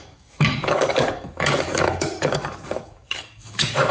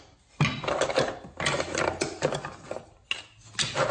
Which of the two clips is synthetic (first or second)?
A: first